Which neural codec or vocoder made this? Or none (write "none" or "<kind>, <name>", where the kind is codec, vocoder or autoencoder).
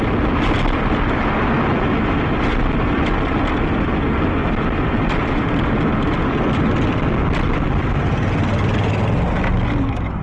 none